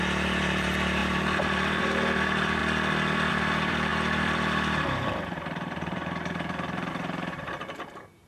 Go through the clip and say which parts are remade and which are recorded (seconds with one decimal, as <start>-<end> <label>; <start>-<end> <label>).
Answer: 0.0-2.6 remade; 2.6-3.3 recorded; 3.3-8.3 remade